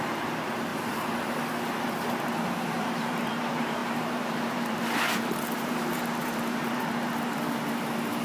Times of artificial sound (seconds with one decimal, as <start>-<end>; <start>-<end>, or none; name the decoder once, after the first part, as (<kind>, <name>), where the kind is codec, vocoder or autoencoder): 0.0-0.7 (vocoder, BigVGAN v2); 2.2-8.2